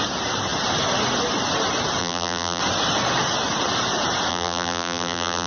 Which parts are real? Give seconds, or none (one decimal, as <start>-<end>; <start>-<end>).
0.0-2.0; 2.6-4.3